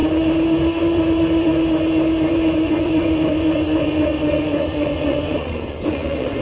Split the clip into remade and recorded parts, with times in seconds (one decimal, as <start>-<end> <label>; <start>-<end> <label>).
0.0-0.8 recorded; 0.8-1.5 remade; 1.5-2.3 recorded; 2.3-6.4 remade